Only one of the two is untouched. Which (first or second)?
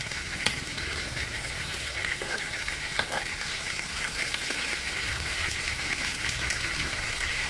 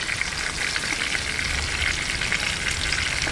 second